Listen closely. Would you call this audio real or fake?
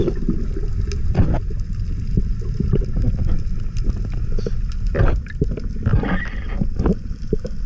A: real